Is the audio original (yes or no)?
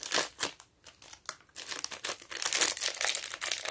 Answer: yes